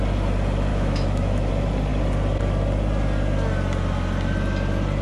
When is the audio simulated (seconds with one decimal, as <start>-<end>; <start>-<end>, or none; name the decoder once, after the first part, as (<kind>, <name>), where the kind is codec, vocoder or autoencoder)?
0.7-1.5 (autoencoder, DAC-VAE)